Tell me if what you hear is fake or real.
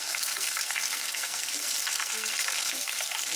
fake